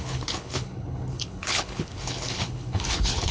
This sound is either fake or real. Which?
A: fake